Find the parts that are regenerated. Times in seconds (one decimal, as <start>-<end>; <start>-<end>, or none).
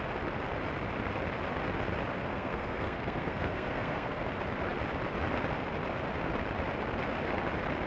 2.3-4.2